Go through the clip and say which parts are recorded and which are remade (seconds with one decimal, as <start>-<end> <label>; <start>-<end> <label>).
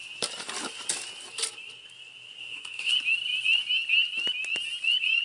0.0-2.4 recorded; 2.4-2.9 remade; 2.9-5.2 recorded